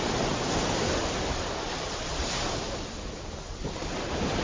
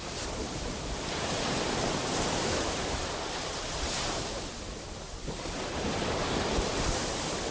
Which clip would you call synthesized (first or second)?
second